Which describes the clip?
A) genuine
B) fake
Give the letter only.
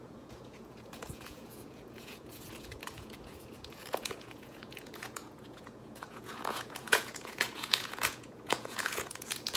B